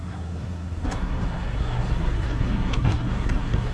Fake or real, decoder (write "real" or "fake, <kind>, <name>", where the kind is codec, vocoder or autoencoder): fake, codec, SNAC